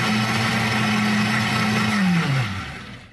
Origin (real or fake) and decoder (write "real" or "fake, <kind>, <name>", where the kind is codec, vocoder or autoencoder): real